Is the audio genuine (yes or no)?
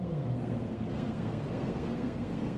no